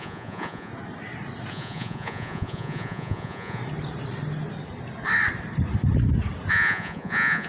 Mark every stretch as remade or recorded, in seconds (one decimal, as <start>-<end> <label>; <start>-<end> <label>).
0.0-0.7 remade; 0.7-1.5 recorded; 1.5-3.6 remade; 3.6-6.5 recorded; 6.5-7.5 remade